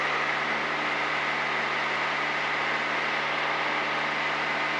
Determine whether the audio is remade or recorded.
recorded